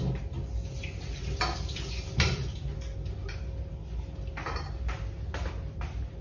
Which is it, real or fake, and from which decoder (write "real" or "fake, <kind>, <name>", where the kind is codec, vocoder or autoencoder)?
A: real